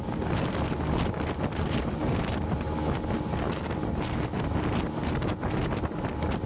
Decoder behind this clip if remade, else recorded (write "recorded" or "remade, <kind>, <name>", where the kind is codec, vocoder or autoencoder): recorded